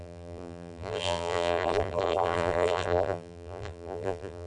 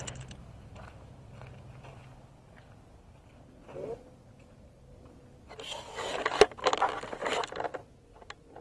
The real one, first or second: second